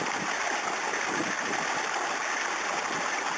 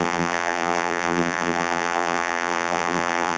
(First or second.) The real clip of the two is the first